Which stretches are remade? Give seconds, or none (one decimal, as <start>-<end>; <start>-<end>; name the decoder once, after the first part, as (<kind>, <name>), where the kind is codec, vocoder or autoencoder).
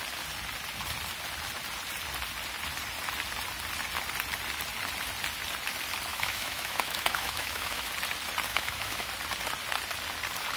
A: 6.1-7.9 (autoencoder, DAC-VAE); 8.5-9.1